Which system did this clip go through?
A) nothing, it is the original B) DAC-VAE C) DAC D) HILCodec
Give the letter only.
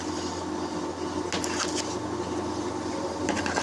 A